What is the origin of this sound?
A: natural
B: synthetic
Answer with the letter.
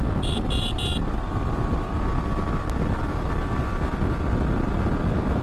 A